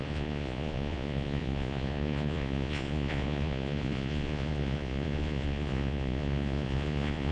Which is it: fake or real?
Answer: fake